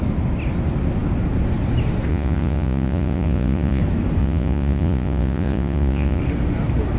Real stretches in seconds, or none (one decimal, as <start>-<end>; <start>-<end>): 0.0-2.1; 3.8-4.2; 6.2-7.0